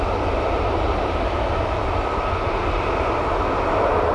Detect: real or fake real